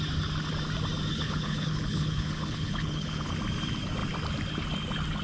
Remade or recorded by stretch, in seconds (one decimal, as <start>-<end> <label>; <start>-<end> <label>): 0.0-1.1 recorded; 1.1-3.3 remade; 3.3-5.2 recorded